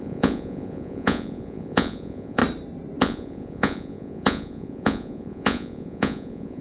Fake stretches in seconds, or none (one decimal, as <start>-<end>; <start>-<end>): 0.0-2.4; 3.0-6.6